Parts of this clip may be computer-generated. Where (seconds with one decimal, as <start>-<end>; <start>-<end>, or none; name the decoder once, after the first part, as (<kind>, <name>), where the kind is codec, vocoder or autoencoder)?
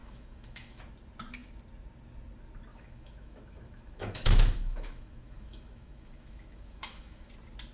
0.0-0.8 (autoencoder, DAC-VAE); 2.7-7.3